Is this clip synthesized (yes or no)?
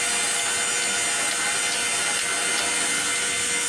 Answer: no